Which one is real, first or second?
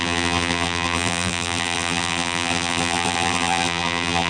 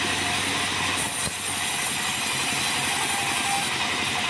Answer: second